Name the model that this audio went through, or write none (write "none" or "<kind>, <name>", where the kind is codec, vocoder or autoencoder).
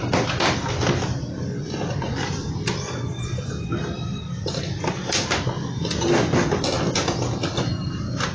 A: none